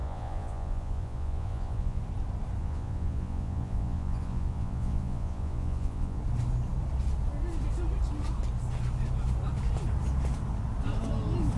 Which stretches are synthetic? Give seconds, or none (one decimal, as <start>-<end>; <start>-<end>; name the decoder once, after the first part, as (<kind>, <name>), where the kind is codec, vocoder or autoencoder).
0.0-2.0 (vocoder, Vocos); 2.6-6.2